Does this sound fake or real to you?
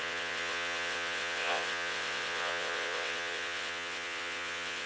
fake